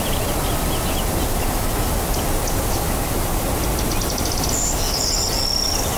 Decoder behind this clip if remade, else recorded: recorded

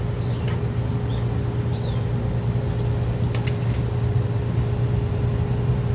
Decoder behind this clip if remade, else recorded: recorded